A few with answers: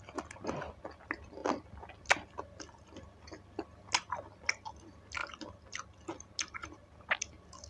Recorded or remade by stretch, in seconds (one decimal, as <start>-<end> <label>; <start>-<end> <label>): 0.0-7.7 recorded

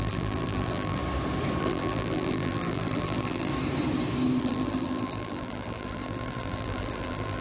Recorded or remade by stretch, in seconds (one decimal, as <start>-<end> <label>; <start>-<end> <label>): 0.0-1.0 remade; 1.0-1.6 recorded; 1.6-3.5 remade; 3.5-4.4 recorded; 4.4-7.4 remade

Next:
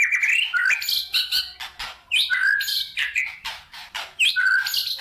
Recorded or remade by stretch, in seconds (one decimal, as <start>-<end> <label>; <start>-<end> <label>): 0.0-2.4 recorded; 2.4-4.3 remade; 4.3-5.0 recorded

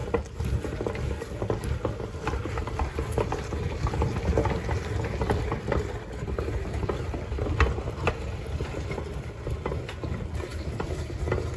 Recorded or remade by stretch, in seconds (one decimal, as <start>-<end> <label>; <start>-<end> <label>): 0.0-11.6 recorded

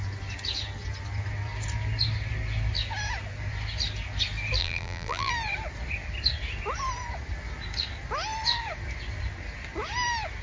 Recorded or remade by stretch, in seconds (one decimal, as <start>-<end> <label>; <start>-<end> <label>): 0.0-4.6 recorded; 4.6-5.3 remade; 5.3-10.4 recorded

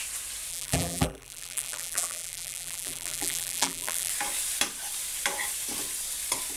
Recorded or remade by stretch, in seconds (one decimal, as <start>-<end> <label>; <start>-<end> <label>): 0.0-0.5 recorded; 0.5-4.1 remade; 4.1-6.6 recorded

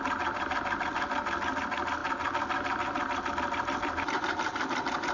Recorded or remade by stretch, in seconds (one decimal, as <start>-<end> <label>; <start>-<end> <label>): 0.0-2.0 remade; 2.0-3.3 recorded; 3.3-5.1 remade